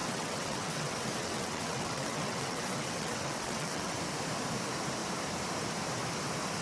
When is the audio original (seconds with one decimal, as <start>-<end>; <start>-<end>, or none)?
4.0-6.6